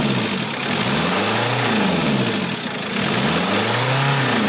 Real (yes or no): yes